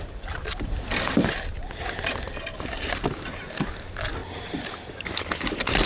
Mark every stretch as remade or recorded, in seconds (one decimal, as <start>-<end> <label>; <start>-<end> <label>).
0.0-5.9 remade